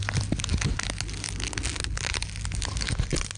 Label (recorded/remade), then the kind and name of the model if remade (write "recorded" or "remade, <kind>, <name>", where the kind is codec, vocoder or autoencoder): recorded